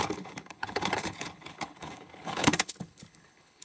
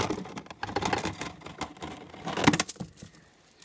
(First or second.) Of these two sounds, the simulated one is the first